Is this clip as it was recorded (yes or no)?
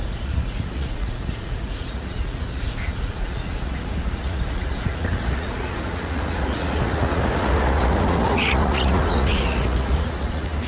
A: no